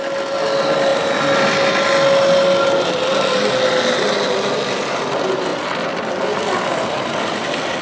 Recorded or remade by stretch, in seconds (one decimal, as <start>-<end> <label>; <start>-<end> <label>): 0.0-7.8 recorded